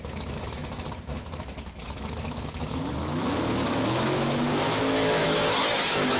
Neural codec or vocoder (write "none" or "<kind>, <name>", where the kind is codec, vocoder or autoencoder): autoencoder, DAC-VAE